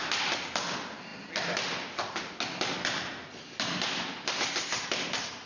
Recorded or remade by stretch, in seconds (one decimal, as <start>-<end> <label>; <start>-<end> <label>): 0.0-5.5 recorded